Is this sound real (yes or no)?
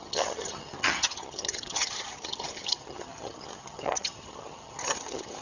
no